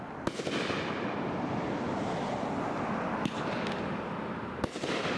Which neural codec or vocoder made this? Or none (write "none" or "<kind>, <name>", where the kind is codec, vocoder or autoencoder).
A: none